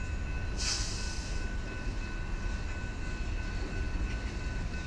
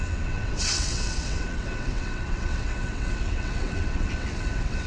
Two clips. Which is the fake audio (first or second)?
second